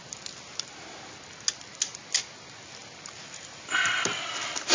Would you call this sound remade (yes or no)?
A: no